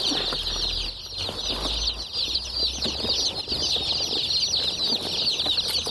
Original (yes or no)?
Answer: yes